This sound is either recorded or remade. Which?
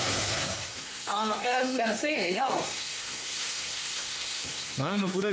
remade